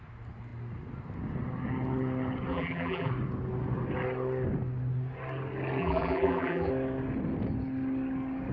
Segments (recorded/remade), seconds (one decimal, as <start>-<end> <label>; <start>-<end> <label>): 0.0-2.5 recorded; 2.5-3.1 remade; 3.1-5.8 recorded; 5.8-6.7 remade; 6.7-8.5 recorded